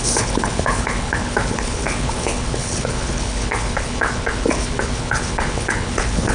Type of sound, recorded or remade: remade